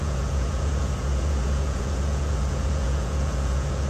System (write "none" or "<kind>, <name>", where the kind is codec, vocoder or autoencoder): vocoder, Vocos